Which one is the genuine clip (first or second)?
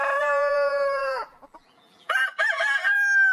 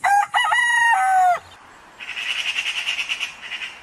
second